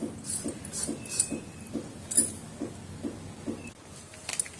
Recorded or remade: recorded